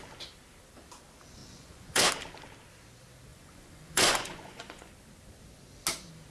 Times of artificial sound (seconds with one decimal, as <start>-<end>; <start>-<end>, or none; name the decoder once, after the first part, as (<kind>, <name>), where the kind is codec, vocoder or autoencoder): 1.4-2.1 (vocoder, Vocos); 3.3-4.9